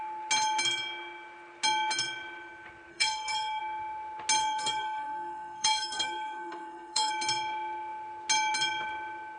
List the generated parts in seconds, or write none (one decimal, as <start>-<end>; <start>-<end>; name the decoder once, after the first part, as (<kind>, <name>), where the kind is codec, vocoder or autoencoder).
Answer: 2.9-3.6 (codec, SNAC); 4.4-7.1